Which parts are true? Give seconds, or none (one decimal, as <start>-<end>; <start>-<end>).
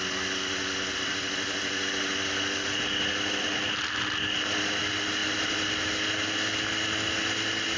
0.0-7.8